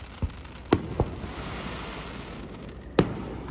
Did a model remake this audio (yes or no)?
no